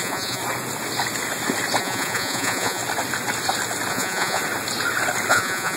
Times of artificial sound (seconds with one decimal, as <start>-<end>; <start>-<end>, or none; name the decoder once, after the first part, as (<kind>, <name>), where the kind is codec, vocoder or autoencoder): 0.0-0.4 (vocoder, Vocos); 1.8-2.8; 3.9-4.4; 5.3-5.8